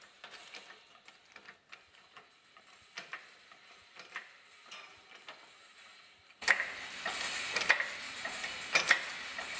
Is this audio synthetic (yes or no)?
no